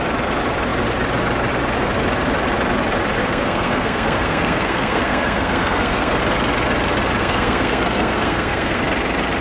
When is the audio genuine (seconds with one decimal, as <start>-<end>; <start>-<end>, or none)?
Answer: 0.0-3.2; 6.2-7.2; 8.8-9.4